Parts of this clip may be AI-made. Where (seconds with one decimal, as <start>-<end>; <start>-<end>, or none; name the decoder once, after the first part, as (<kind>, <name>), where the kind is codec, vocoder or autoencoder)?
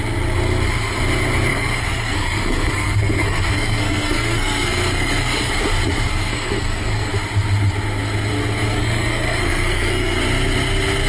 1.5-5.5 (codec, SNAC); 6.1-7.1; 8.7-10.2